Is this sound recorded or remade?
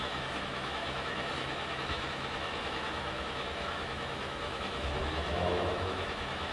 remade